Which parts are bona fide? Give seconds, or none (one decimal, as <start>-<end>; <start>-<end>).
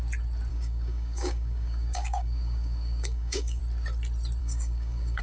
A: 0.0-0.5; 3.6-4.4